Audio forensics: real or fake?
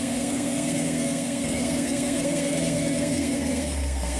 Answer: fake